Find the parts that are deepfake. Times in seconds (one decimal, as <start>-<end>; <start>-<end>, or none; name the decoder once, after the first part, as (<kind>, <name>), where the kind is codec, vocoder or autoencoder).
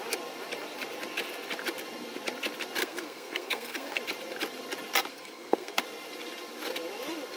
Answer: 2.8-4.0 (codec, SNAC); 5.1-5.8